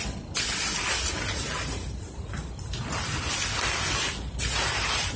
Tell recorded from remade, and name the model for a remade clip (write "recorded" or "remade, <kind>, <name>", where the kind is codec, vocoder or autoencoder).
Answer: recorded